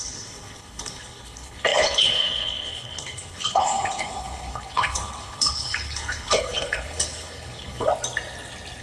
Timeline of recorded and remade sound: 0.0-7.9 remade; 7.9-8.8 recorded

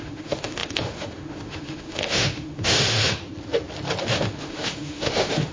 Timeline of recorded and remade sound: 0.0-3.2 remade; 3.2-4.0 recorded; 4.0-5.5 remade

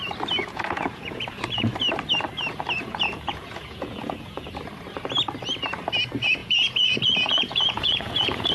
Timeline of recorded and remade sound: 0.0-0.4 recorded; 0.4-1.7 remade; 1.7-2.8 recorded; 2.8-4.5 remade; 4.5-6.4 recorded; 6.4-8.5 remade

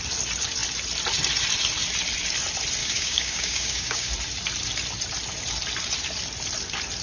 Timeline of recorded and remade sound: 0.0-2.8 recorded; 2.8-4.1 remade; 4.1-7.0 recorded